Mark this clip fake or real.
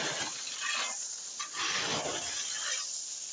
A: real